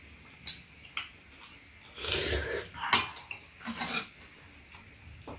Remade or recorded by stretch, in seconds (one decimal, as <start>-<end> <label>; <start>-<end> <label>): 0.0-5.4 recorded